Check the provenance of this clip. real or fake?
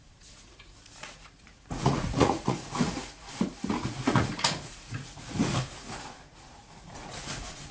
fake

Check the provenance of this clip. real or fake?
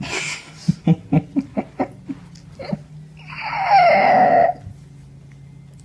real